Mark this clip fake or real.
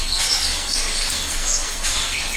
fake